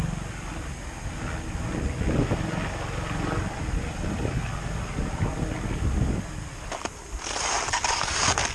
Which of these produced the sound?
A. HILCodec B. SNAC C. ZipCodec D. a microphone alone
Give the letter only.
D